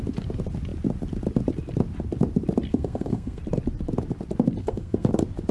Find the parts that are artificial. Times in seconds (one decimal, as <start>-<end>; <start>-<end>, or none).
2.7-3.4; 4.6-5.1